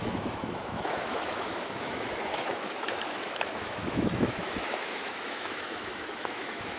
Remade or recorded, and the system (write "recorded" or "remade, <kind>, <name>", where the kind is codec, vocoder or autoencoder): remade, autoencoder, DAC-VAE